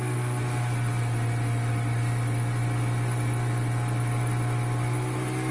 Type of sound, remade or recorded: recorded